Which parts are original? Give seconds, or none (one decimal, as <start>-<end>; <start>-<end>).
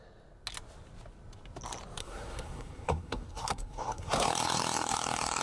0.0-2.0